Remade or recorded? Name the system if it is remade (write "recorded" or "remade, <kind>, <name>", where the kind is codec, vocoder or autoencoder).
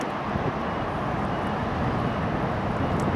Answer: recorded